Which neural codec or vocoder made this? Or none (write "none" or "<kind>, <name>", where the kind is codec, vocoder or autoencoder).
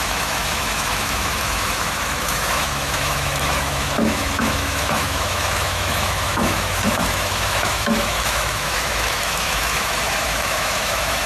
autoencoder, DAC-VAE